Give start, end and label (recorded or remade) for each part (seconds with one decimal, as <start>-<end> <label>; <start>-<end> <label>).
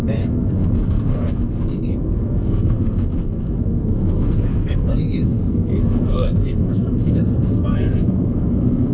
0.0-8.9 remade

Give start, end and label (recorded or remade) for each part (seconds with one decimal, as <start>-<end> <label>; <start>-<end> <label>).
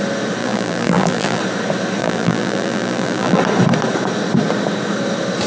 0.0-0.4 recorded; 0.4-1.4 remade; 1.4-2.0 recorded; 2.0-3.4 remade; 3.4-5.5 recorded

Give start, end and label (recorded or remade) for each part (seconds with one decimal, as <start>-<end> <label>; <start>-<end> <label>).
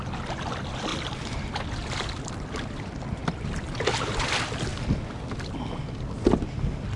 0.0-0.9 recorded; 0.9-3.4 remade; 3.4-7.0 recorded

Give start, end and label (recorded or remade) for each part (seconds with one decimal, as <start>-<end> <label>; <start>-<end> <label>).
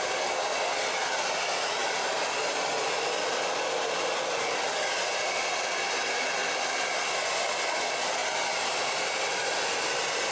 0.0-10.3 recorded